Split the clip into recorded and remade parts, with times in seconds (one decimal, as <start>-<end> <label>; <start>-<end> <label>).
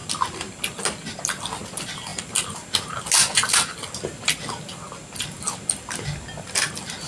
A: 0.0-7.1 recorded